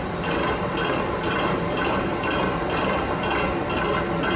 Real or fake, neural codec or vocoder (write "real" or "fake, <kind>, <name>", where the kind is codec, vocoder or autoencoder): real